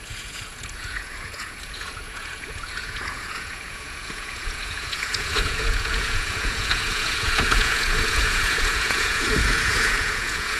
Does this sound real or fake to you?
fake